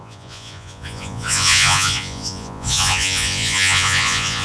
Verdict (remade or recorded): remade